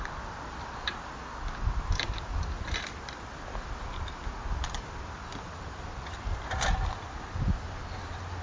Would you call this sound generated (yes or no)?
no